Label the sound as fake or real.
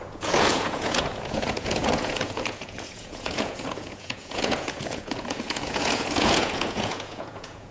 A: fake